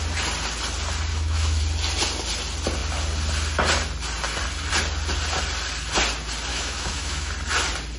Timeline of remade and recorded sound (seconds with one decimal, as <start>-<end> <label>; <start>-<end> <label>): 0.0-1.1 recorded; 1.1-1.6 remade; 1.6-6.5 recorded; 6.5-7.3 remade; 7.3-8.0 recorded